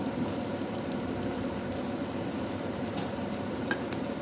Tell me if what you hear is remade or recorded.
remade